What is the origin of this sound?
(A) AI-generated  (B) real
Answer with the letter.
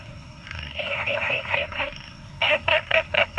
A